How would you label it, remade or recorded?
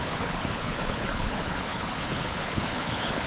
remade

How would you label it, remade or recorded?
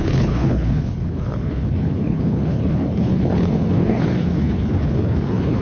remade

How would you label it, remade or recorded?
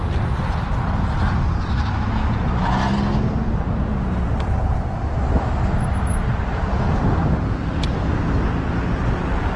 recorded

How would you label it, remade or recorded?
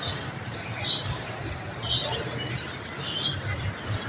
recorded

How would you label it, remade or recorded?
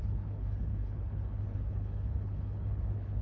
remade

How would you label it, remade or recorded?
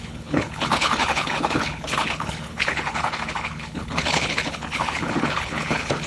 remade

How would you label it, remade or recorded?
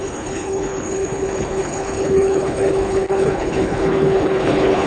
remade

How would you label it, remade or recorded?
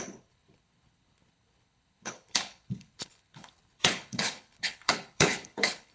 remade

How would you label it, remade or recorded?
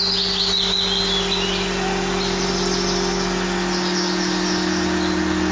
recorded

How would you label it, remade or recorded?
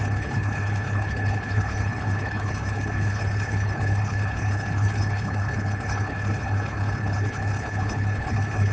remade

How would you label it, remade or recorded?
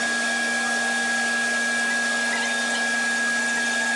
recorded